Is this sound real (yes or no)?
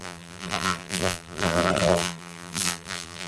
no